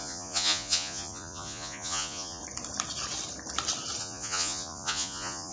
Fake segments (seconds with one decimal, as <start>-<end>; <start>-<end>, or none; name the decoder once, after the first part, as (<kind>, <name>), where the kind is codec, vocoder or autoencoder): 0.0-2.4 (vocoder, Vocos); 4.0-5.5